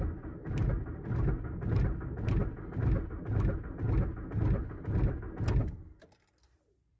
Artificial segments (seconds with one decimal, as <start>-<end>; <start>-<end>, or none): none